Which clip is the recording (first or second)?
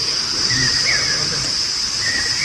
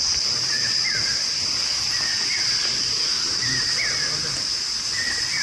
second